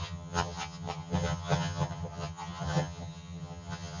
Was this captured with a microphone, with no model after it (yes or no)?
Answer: no